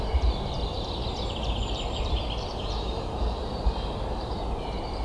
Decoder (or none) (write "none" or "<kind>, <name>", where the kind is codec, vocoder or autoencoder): vocoder, BigVGAN v2